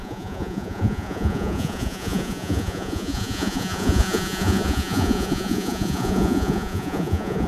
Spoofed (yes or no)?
yes